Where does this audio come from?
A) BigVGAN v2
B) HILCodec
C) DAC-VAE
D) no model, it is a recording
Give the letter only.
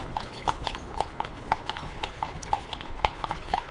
B